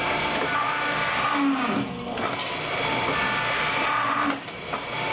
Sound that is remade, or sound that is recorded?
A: recorded